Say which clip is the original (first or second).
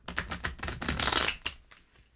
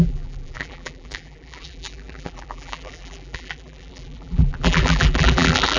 first